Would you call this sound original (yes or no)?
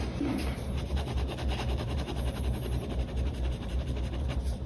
no